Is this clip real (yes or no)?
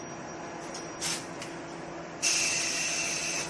yes